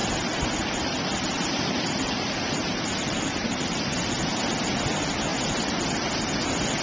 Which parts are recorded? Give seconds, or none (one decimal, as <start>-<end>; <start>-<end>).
4.1-5.3; 5.8-6.8